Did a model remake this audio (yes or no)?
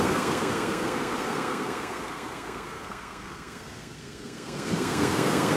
yes